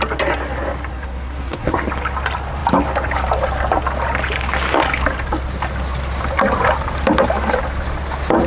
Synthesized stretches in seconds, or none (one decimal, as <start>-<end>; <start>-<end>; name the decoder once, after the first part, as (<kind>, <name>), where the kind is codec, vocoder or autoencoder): 0.9-1.9 (codec, SNAC)